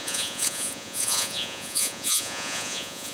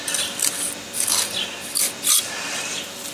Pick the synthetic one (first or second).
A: first